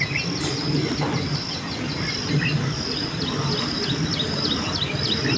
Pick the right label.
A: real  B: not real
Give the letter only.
A